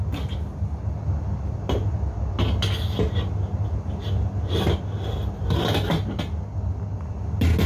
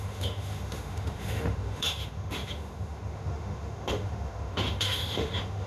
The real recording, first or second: first